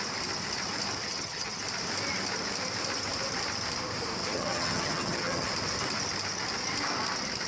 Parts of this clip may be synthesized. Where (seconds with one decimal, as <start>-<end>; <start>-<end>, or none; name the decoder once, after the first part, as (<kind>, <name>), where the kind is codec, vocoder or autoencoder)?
1.0-1.6 (vocoder, HiFi-GAN); 4.2-5.5